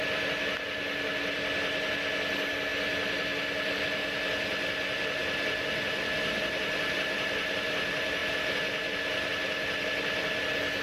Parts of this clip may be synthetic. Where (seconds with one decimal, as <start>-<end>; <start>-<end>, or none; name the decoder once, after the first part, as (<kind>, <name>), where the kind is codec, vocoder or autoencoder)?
none